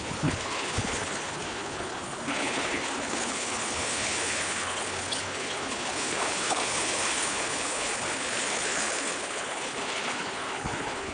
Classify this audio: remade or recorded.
remade